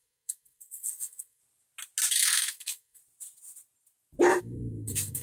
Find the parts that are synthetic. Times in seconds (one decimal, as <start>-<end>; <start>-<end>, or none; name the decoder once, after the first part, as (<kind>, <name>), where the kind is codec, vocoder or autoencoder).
0.0-1.4 (codec, SNAC); 2.1-3.0; 4.4-5.2